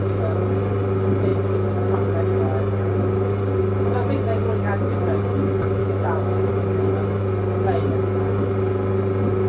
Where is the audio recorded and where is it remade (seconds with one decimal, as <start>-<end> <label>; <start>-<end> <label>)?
0.0-5.8 recorded; 5.8-6.5 remade; 6.5-9.5 recorded